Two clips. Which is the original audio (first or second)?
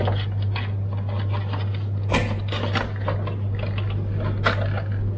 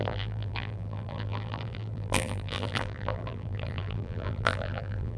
first